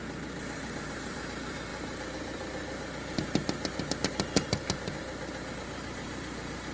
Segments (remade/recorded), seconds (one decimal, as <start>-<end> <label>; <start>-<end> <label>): 0.0-6.7 recorded